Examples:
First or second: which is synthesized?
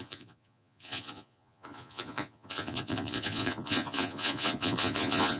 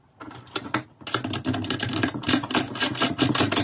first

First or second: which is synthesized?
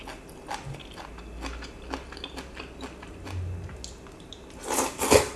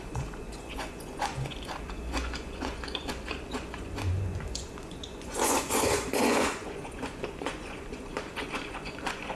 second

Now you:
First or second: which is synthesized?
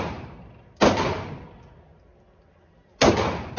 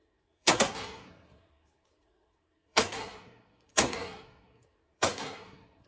second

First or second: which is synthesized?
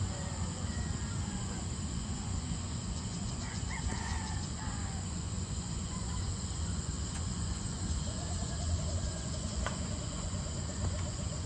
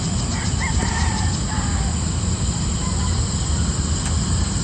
first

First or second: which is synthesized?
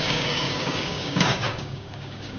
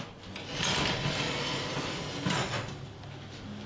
first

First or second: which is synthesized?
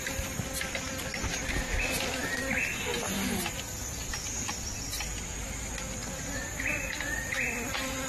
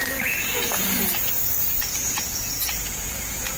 second